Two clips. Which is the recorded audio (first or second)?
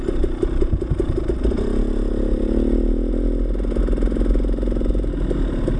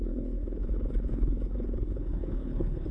first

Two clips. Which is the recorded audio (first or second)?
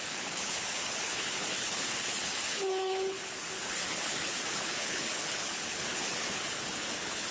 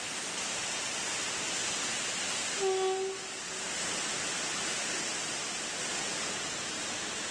second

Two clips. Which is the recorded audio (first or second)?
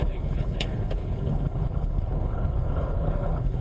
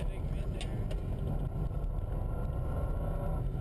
second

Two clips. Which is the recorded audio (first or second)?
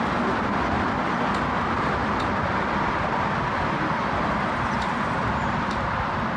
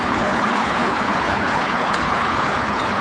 first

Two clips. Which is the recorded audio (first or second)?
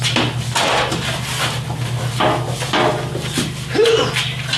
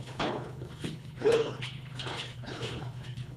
first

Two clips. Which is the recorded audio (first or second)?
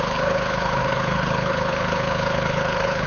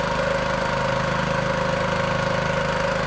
second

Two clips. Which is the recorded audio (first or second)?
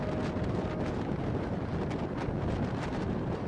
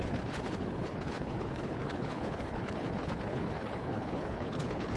first